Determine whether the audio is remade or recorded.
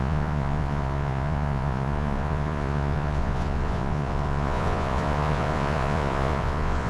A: remade